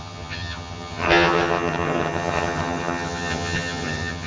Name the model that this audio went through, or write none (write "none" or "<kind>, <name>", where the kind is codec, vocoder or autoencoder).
vocoder, HiFi-GAN